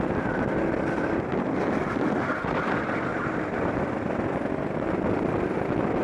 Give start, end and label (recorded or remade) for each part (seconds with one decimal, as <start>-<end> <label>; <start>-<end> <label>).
0.0-3.1 recorded; 3.1-3.7 remade; 3.7-6.0 recorded